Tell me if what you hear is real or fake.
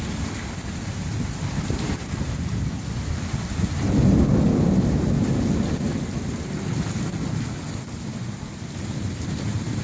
fake